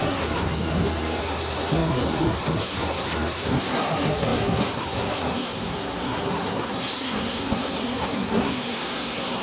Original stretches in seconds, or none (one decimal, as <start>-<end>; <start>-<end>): none